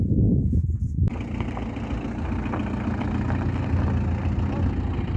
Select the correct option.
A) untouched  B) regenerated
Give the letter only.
A